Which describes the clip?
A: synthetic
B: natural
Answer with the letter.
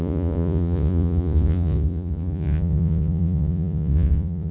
A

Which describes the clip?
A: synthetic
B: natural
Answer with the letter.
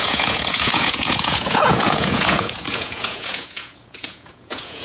A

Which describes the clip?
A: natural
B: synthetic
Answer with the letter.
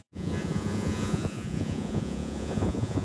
B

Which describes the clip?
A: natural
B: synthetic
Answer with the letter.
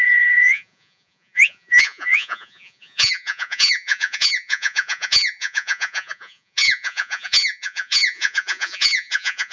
B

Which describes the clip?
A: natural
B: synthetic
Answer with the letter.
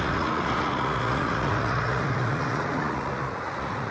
B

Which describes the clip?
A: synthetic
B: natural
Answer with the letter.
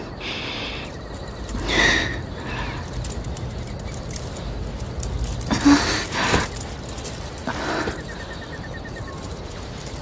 B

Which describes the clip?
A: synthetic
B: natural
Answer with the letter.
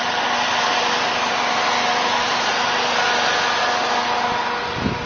B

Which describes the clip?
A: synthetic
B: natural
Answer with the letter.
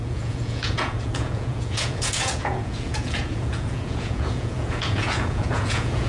A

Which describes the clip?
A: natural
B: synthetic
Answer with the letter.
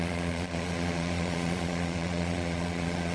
B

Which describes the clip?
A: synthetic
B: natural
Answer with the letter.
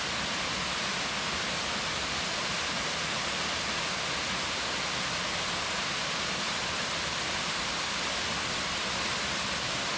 B